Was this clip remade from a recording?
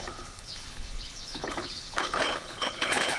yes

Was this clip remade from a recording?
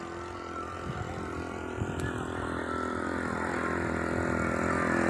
no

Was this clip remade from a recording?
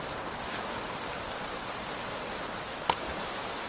no